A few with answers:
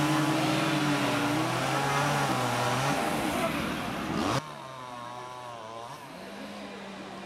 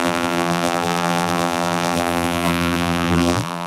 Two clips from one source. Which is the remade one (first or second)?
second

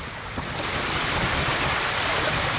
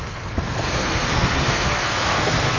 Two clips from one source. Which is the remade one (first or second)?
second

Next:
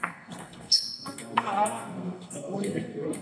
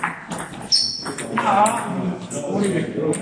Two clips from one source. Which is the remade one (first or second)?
first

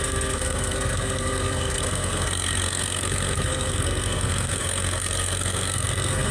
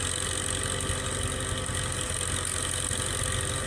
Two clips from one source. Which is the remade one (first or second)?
first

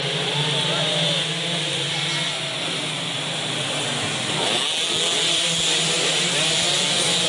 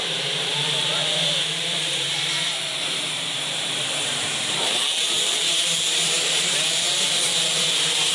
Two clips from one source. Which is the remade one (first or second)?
second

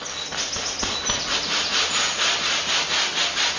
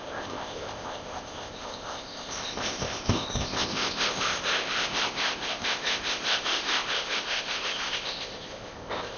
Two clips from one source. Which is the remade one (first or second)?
second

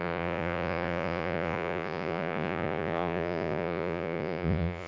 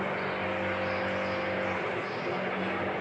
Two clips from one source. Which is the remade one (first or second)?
first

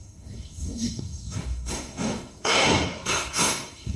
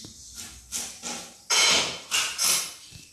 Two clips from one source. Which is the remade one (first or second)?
first